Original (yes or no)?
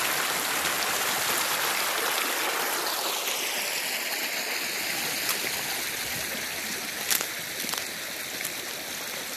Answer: yes